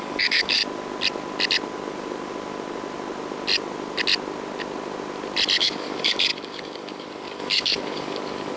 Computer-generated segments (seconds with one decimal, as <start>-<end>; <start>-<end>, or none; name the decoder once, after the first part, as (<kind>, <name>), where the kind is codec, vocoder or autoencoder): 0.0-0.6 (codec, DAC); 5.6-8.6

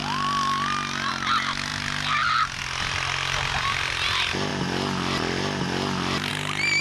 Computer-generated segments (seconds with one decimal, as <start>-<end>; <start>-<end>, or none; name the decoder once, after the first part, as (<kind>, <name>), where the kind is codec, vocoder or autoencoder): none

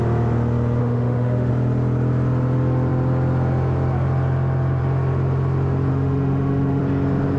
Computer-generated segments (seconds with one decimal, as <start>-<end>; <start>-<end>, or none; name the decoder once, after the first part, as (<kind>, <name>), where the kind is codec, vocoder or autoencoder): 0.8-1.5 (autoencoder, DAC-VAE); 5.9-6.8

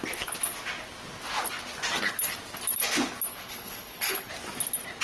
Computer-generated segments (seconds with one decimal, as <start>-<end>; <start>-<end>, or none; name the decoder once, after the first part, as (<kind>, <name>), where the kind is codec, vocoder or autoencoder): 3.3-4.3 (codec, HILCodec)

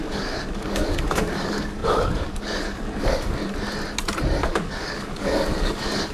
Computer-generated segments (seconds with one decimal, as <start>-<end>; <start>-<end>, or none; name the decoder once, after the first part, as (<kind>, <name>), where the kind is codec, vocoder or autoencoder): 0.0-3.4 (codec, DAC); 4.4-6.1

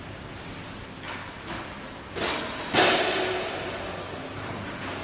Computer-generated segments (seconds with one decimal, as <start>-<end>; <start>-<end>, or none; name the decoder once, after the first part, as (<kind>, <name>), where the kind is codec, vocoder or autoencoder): none